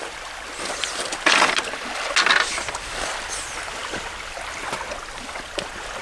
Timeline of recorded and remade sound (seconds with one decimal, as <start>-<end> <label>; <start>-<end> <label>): 0.0-6.0 recorded